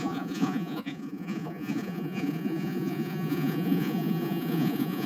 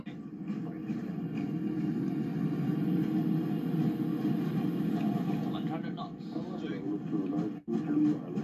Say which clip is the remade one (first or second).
first